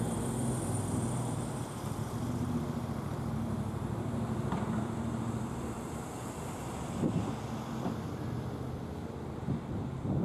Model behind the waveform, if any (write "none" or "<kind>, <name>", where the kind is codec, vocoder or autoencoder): none